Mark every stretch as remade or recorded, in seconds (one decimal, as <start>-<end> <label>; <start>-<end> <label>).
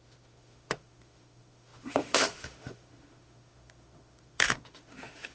0.0-5.3 remade